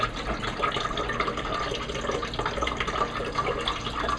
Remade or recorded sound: recorded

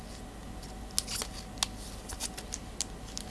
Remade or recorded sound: recorded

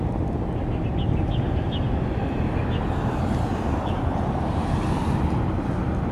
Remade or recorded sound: recorded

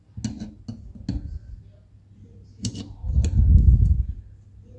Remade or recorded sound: recorded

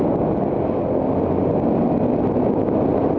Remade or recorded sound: recorded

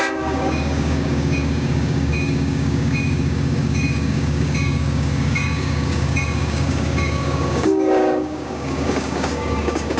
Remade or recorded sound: remade